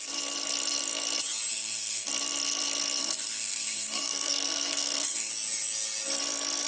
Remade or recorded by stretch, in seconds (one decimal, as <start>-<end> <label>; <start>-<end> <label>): 0.0-1.5 recorded; 1.5-2.1 remade; 2.1-3.0 recorded; 3.0-5.3 remade; 5.3-6.7 recorded